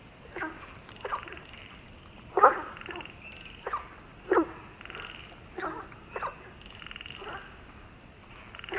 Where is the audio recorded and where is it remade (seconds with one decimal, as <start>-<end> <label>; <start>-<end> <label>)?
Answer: 0.0-8.8 recorded